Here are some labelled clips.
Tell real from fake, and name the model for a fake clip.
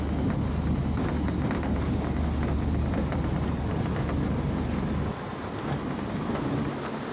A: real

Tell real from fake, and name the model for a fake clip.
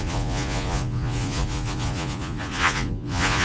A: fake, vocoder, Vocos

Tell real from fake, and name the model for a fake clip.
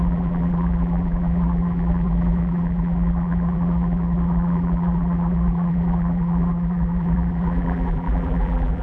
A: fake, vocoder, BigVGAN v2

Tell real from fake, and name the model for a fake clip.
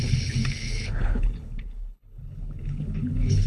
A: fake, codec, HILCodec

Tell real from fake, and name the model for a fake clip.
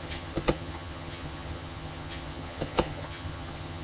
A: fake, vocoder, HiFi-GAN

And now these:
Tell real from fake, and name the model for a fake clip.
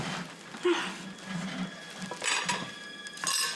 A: real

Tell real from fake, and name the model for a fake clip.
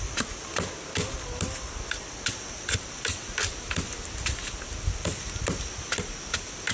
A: real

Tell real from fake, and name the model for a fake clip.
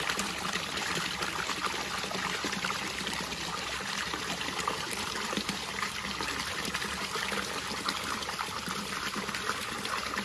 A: fake, vocoder, BigVGAN v2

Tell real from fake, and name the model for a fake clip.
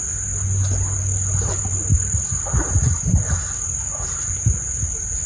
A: real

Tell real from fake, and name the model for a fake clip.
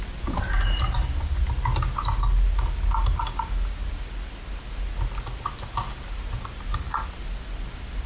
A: real